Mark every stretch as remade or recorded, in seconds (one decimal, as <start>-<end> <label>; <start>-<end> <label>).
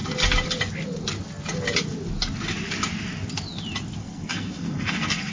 0.0-4.0 recorded; 4.0-5.3 remade